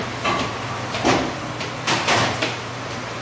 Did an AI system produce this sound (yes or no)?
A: yes